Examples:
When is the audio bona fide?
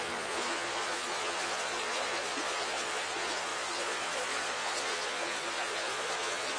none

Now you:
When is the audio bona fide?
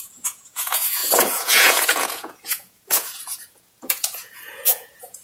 none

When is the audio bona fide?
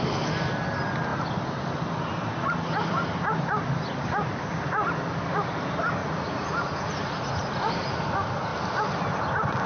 0.0-6.0; 7.7-9.7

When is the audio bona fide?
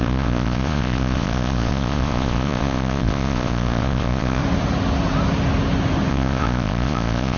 4.4-6.1